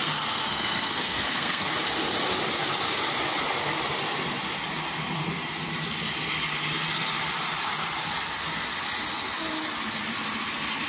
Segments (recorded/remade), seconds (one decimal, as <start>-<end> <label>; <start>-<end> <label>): 0.0-1.7 remade; 1.7-10.9 recorded